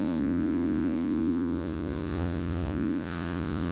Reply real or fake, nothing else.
fake